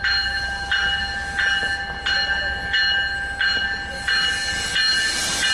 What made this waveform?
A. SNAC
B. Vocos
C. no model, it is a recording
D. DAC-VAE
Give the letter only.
C